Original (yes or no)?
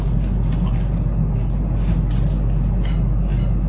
yes